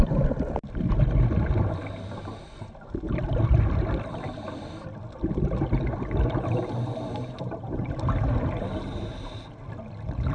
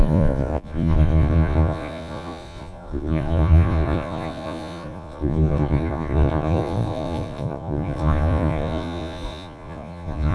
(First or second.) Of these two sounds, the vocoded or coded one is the second